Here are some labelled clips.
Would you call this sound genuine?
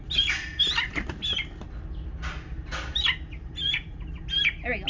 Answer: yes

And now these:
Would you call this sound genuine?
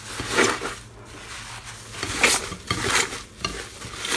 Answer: yes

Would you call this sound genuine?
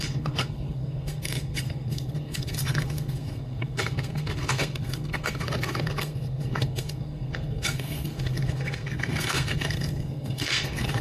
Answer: no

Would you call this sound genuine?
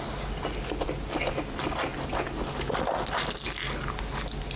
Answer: yes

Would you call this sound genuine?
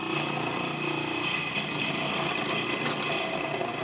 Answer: yes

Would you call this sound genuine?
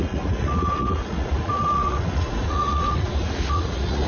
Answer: no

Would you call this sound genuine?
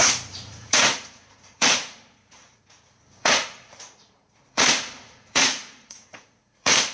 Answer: no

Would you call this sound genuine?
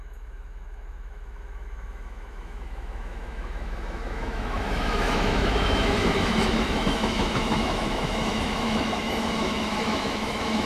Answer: no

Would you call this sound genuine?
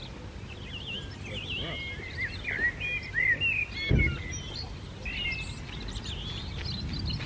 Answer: yes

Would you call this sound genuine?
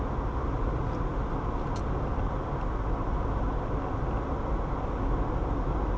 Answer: yes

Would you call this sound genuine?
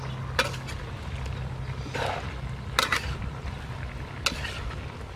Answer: yes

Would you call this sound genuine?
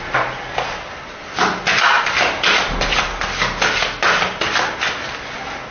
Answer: yes